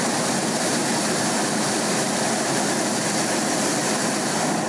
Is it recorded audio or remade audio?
recorded